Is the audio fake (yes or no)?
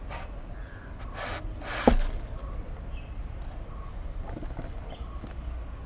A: no